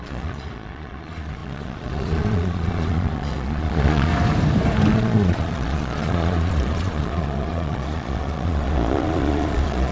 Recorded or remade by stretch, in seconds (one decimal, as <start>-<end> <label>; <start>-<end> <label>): 0.0-4.1 remade; 4.1-4.9 recorded; 4.9-9.9 remade